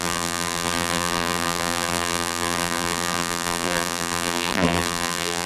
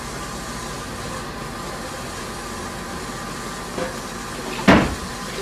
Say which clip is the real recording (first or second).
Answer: second